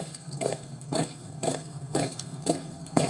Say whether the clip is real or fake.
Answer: fake